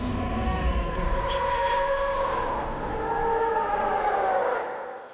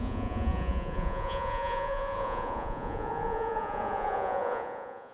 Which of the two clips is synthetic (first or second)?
second